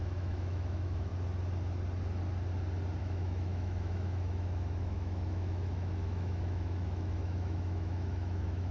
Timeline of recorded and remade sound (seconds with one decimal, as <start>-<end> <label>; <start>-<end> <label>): 0.0-1.1 remade; 1.1-3.0 recorded; 3.0-8.7 remade